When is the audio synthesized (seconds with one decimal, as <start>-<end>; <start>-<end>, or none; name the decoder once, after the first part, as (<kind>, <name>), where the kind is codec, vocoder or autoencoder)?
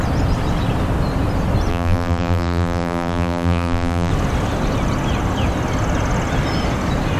1.7-4.1 (vocoder, BigVGAN v2)